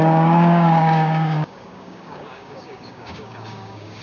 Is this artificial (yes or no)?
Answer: yes